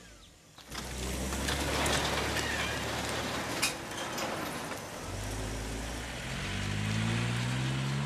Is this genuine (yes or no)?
yes